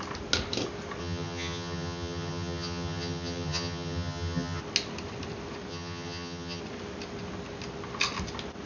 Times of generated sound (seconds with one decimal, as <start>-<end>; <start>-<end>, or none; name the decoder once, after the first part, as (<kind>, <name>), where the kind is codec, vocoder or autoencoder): 1.0-4.6 (vocoder, HiFi-GAN); 5.7-6.6

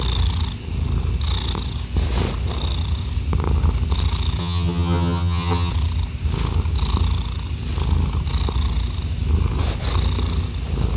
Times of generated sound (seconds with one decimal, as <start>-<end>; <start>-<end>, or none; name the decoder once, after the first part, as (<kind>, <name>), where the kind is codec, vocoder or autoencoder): 4.4-5.7 (vocoder, HiFi-GAN)

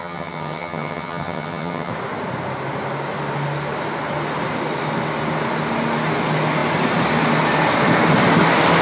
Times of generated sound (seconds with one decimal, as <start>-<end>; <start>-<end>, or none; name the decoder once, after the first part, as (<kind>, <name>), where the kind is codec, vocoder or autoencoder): 0.0-1.9 (vocoder, HiFi-GAN)

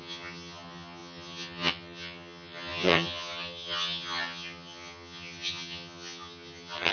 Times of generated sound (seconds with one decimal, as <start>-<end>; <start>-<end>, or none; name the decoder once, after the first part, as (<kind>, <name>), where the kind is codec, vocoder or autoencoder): 0.0-6.9 (vocoder, HiFi-GAN)

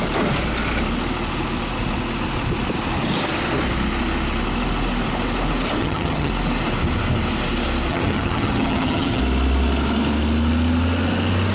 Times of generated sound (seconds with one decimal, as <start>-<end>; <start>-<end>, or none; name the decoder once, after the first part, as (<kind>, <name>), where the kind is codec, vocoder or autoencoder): 5.8-6.3 (vocoder, HiFi-GAN); 7.9-9.2

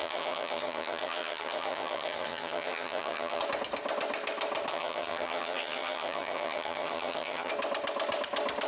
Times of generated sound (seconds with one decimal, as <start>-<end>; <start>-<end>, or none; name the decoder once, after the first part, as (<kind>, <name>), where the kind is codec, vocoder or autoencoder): 0.0-3.4 (vocoder, HiFi-GAN); 4.7-7.5